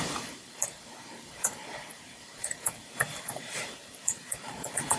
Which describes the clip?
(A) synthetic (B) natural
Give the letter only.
A